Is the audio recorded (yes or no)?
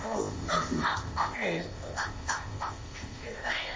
no